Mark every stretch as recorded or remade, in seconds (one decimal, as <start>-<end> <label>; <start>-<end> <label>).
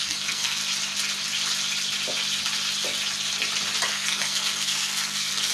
0.0-0.6 remade; 0.6-3.9 recorded; 3.9-5.5 remade